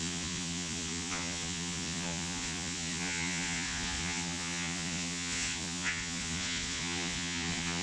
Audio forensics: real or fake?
fake